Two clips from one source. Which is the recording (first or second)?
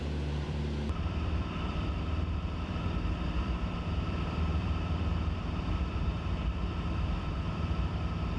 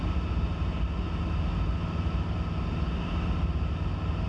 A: second